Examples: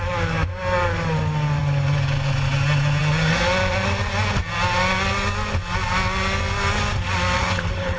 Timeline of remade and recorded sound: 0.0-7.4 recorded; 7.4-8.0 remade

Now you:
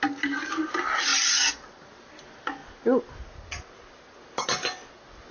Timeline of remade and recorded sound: 0.0-5.3 recorded

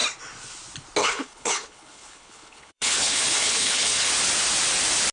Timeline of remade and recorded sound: 0.0-1.0 recorded; 1.0-4.1 remade; 4.1-5.1 recorded

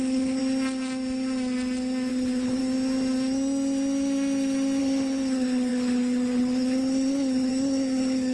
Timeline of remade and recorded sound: 0.0-0.4 remade; 0.4-2.1 recorded; 2.1-2.6 remade; 2.6-4.8 recorded; 4.8-8.3 remade

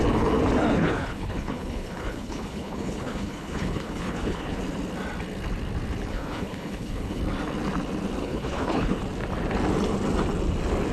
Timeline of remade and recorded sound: 0.0-0.7 recorded; 0.7-4.6 remade; 4.6-6.1 recorded; 6.1-7.2 remade; 7.2-8.2 recorded; 8.2-9.0 remade; 9.0-10.9 recorded

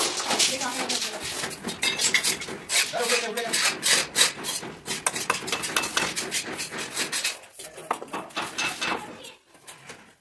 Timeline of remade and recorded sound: 0.0-10.2 recorded